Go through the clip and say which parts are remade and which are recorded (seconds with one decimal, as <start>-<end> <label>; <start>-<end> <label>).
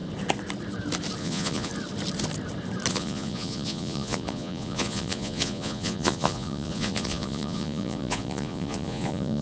0.0-1.2 recorded; 1.2-1.7 remade; 1.7-2.9 recorded; 2.9-9.4 remade